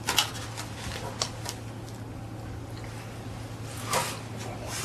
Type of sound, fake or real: real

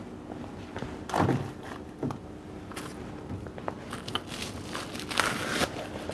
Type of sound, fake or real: real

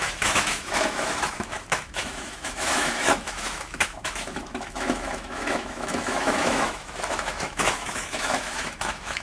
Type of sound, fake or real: fake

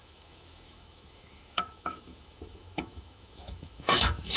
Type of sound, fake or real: fake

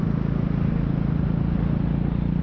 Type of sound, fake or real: real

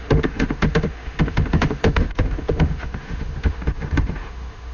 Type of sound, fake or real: fake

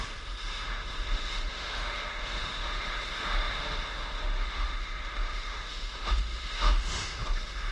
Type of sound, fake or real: fake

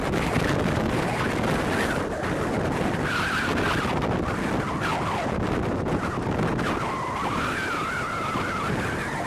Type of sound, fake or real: real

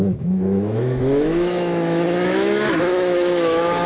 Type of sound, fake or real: fake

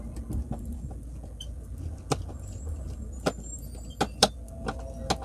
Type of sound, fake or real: real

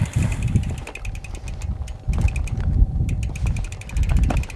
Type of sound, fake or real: real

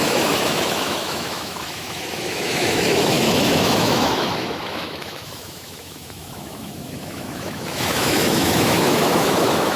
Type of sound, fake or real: fake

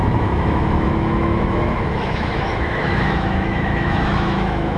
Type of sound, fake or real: fake